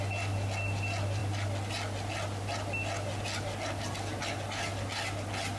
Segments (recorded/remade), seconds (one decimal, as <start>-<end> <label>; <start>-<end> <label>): 0.0-5.6 recorded

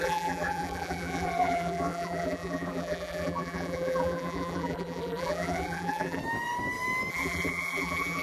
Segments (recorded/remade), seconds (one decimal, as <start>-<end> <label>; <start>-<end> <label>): 0.0-6.2 remade; 6.2-7.1 recorded; 7.1-8.2 remade

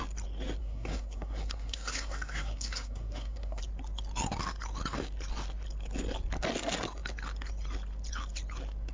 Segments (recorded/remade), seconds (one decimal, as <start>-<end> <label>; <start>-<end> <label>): 0.0-0.6 recorded; 0.6-3.6 remade; 3.6-8.9 recorded

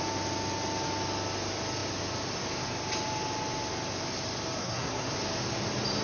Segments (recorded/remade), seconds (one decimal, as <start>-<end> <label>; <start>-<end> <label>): 0.0-4.6 recorded; 4.6-5.1 remade; 5.1-6.0 recorded

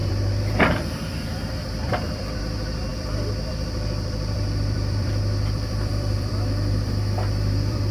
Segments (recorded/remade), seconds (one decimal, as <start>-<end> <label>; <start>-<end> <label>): 0.0-7.9 remade

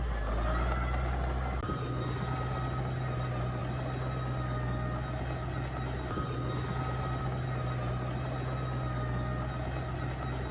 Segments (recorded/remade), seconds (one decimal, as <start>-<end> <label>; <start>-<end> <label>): 0.0-10.5 recorded

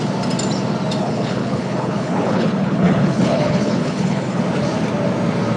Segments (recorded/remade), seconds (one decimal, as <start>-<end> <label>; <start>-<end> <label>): 0.0-1.0 recorded; 1.0-4.4 remade; 4.4-5.6 recorded

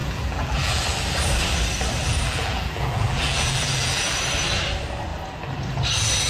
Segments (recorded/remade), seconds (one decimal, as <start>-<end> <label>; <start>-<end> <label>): 0.0-0.8 remade; 0.8-2.0 recorded; 2.0-4.1 remade; 4.1-6.3 recorded